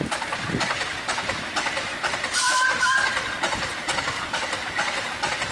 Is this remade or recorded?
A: remade